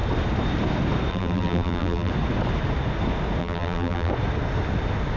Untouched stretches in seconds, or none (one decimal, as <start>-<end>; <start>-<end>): 0.0-1.1; 2.1-3.4; 4.1-5.2